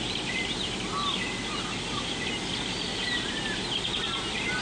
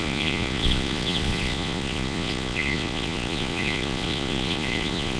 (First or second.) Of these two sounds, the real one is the first